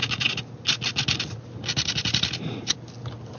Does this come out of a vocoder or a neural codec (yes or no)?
no